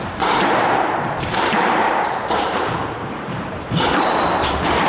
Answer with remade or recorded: remade